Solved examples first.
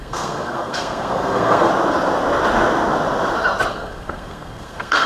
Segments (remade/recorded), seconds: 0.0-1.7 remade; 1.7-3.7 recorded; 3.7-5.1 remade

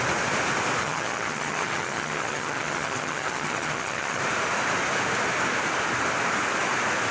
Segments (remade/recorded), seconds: 0.0-0.8 recorded; 0.8-4.2 remade; 4.2-7.1 recorded

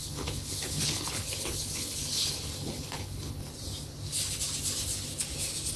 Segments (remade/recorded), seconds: 0.0-3.5 remade; 3.5-5.8 recorded